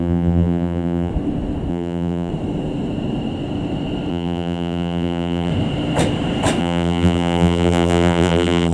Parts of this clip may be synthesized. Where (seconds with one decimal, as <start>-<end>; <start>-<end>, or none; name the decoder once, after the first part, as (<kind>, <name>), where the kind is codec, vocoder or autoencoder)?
0.0-1.1 (vocoder, BigVGAN v2); 1.7-2.3; 4.1-5.5; 6.6-8.7